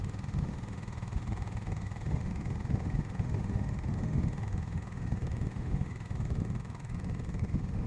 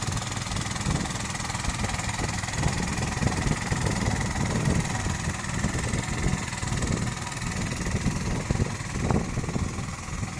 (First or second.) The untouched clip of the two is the second